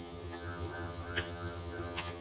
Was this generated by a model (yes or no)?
yes